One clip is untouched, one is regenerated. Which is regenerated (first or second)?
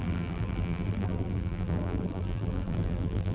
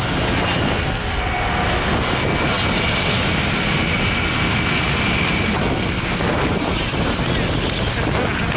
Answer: first